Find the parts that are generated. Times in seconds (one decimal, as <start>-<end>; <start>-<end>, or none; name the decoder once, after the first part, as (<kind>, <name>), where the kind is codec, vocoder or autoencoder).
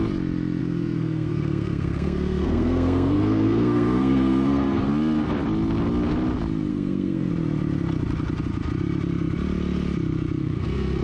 0.6-4.9 (codec, SNAC); 6.7-7.3; 10.4-11.0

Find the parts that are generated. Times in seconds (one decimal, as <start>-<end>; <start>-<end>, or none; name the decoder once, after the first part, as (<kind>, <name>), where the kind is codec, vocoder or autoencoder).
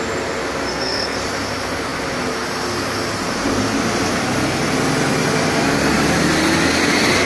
0.7-1.2 (codec, SNAC)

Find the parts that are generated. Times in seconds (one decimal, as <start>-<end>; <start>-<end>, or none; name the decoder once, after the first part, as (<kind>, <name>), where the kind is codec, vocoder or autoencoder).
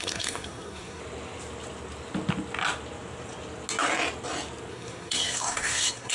0.0-1.0 (codec, SNAC); 4.7-6.1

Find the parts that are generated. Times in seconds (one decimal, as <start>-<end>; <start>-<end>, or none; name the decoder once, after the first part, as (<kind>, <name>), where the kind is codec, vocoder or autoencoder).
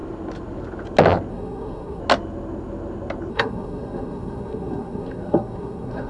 1.3-2.0 (codec, SNAC); 3.3-6.1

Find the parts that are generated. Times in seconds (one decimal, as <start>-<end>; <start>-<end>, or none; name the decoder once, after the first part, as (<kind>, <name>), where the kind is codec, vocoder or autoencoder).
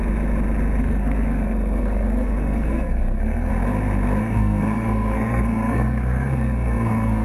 0.8-3.5 (codec, SNAC); 4.2-7.2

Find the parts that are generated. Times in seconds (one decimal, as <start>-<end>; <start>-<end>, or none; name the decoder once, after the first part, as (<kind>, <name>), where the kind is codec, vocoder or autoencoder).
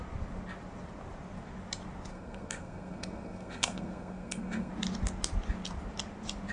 2.1-4.7 (codec, SNAC)